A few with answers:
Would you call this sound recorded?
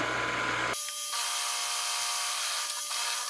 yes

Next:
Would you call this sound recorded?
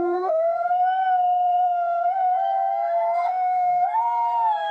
no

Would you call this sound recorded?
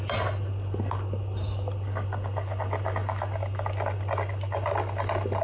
yes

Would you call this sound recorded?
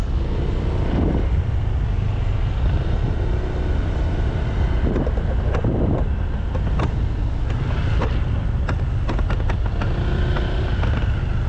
yes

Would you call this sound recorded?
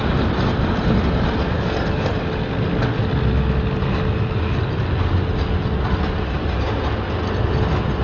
yes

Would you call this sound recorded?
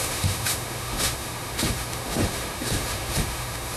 no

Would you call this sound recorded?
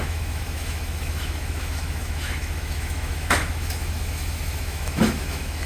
no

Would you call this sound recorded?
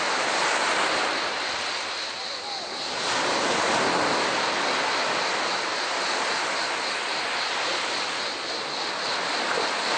yes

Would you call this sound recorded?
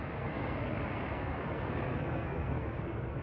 no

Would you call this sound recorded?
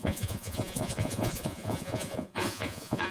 no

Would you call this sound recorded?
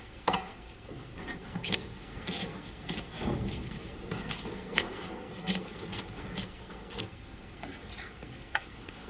no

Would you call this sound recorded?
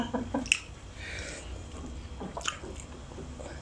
yes